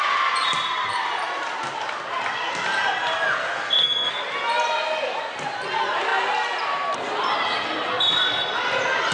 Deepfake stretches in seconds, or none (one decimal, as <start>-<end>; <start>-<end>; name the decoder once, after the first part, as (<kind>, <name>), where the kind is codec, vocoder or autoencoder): 3.4-4.2 (codec, SNAC)